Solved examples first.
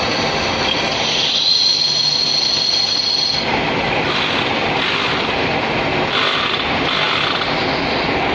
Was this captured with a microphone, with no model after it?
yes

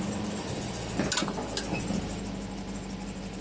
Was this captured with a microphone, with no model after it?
yes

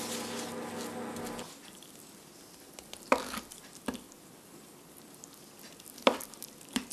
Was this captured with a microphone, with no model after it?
yes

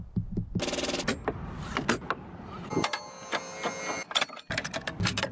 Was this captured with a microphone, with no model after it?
yes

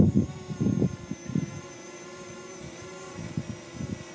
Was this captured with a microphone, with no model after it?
yes